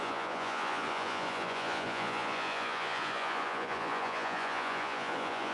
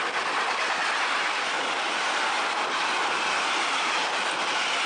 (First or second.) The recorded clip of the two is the second